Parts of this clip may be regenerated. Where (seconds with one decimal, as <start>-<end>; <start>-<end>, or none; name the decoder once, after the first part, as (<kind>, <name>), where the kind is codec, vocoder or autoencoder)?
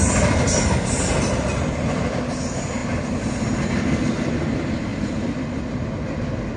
0.0-0.6 (vocoder, BigVGAN v2); 2.8-4.0; 4.9-5.9